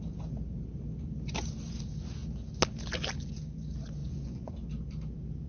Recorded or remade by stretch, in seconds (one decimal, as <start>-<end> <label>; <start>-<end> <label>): 0.0-4.0 recorded; 4.0-4.5 remade; 4.5-5.5 recorded